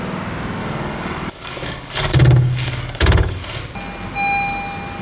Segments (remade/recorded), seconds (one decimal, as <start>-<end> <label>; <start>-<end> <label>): 0.0-0.6 recorded; 0.6-3.6 remade; 3.6-5.0 recorded